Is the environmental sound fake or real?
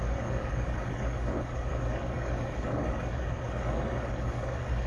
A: fake